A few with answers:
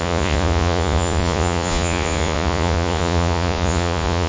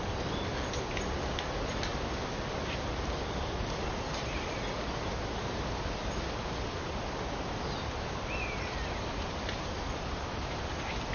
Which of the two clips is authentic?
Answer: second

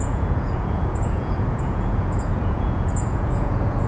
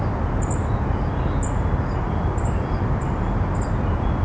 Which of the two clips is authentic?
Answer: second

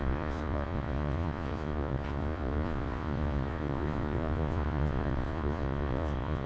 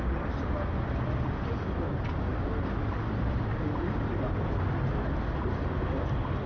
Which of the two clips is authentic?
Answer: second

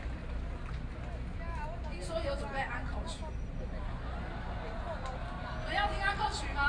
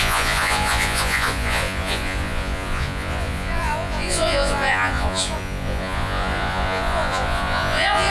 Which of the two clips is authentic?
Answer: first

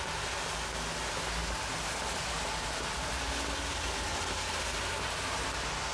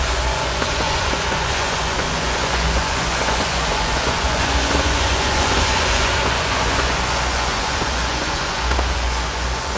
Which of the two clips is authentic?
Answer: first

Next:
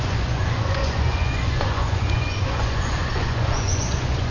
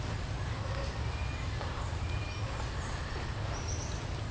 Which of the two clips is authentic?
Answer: second